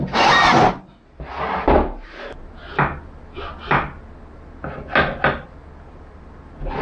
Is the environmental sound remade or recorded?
recorded